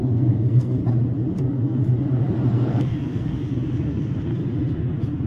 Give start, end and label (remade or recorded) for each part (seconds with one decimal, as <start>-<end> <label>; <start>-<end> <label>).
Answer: 0.0-0.8 remade; 0.8-1.4 recorded; 1.4-1.8 remade; 1.8-2.5 recorded; 2.5-4.3 remade; 4.3-5.3 recorded